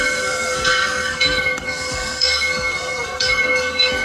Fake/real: fake